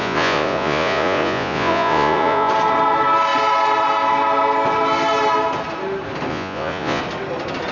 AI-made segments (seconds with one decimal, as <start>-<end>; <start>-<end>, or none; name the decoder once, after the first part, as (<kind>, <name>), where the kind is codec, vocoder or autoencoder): 0.0-2.5 (vocoder, Vocos); 6.3-7.0